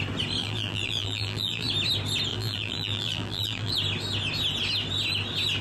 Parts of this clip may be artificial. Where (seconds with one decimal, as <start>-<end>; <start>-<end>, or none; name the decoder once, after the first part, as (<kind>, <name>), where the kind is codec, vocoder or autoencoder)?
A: 0.4-1.7 (vocoder, BigVGAN v2); 2.3-3.7